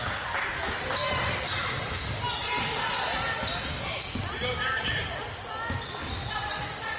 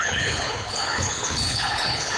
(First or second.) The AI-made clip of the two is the second